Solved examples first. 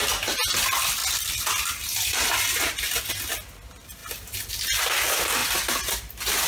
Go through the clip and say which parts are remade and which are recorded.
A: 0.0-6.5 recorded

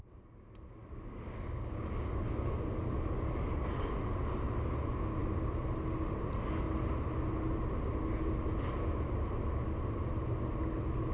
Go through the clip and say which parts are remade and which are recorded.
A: 0.0-0.8 recorded; 0.8-2.8 remade; 2.8-11.1 recorded

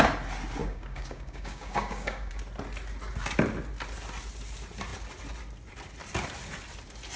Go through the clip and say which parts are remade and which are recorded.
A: 0.0-0.6 recorded; 0.6-2.3 remade; 2.3-7.2 recorded

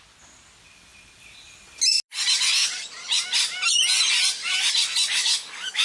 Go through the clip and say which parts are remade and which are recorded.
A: 0.0-5.1 recorded; 5.1-5.8 remade